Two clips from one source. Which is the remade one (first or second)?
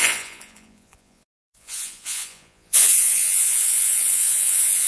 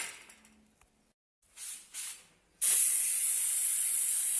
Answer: first